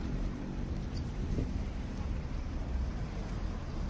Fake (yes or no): yes